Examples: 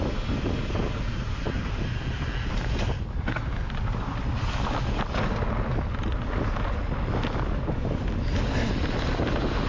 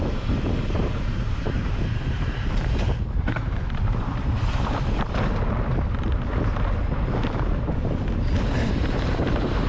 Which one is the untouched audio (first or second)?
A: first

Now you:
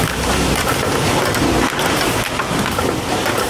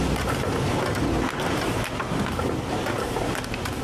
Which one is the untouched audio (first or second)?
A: second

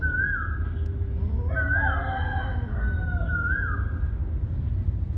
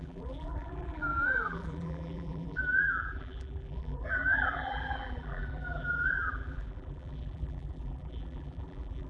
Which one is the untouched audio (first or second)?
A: first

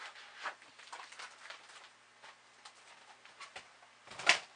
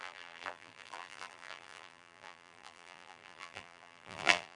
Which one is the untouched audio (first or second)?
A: first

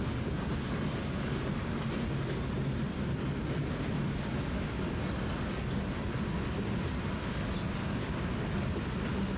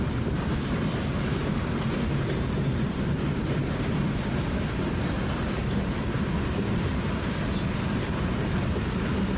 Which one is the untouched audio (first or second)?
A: first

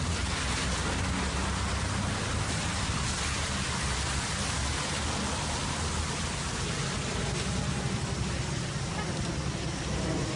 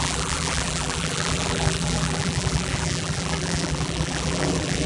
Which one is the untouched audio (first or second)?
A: first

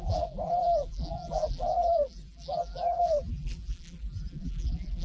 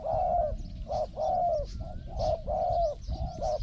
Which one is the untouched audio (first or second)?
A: second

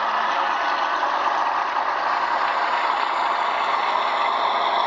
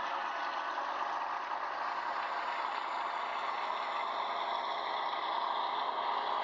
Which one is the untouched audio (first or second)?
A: second